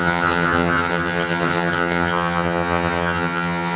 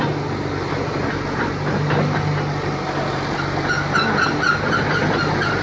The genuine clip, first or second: second